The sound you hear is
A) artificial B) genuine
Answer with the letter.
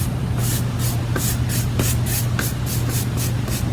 B